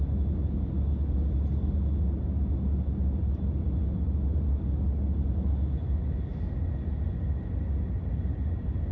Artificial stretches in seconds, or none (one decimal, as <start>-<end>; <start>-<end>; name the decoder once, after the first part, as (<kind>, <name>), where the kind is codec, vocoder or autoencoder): none